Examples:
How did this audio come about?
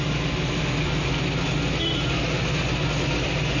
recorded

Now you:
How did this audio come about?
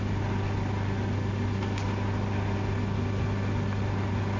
recorded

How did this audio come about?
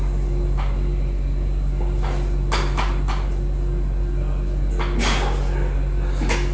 recorded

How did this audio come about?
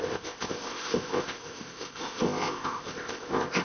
remade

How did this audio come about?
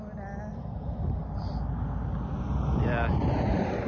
recorded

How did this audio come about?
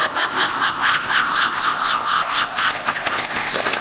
remade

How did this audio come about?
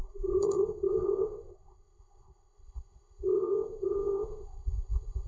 remade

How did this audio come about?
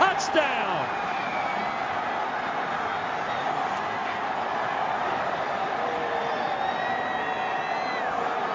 recorded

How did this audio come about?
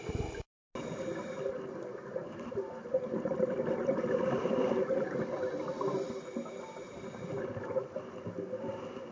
recorded